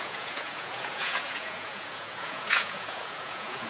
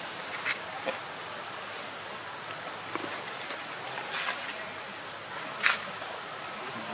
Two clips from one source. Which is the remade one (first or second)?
first